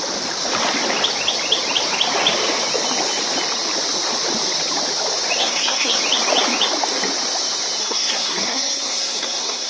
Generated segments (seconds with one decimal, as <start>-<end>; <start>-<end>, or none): 5.4-6.0; 7.8-9.7